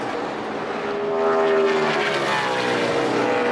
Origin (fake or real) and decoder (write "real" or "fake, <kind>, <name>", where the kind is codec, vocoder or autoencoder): real